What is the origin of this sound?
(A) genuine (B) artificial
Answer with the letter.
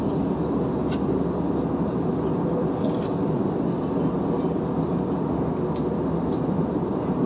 A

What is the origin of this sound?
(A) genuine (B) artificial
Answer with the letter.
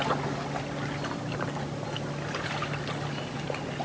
A